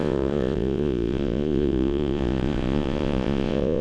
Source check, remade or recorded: remade